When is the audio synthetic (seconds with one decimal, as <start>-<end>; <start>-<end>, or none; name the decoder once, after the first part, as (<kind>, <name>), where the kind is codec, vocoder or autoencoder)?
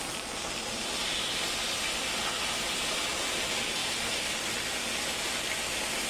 none